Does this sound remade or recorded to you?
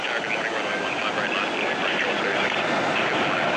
recorded